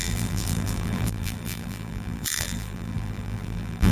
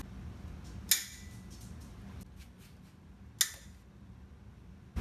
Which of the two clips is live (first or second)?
second